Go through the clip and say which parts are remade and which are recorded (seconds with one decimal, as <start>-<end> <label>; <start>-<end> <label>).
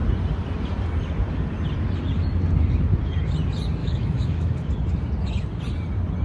0.0-3.8 recorded; 3.8-4.7 remade; 4.7-6.2 recorded